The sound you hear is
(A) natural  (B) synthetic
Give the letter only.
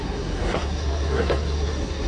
B